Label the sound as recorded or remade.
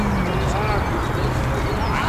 recorded